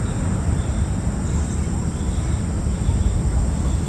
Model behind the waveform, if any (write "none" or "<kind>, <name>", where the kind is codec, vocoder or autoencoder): none